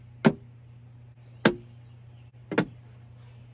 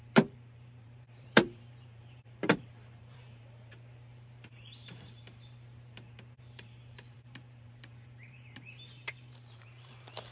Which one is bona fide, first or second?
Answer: first